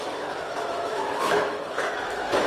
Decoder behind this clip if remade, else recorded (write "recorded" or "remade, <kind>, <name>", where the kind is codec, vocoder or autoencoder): remade, autoencoder, DAC-VAE